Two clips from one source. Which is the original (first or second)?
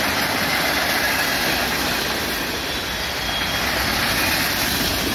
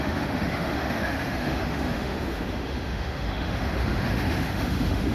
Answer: first